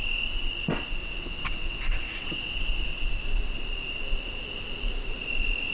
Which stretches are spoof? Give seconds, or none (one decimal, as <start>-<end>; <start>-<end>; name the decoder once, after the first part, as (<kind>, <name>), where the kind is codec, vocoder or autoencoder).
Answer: 1.0-3.1 (vocoder, WaveNeXt)